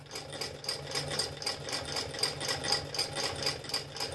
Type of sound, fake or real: real